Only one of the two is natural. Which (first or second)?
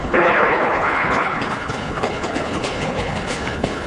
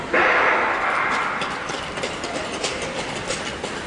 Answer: second